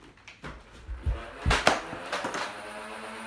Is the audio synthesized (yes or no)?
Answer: no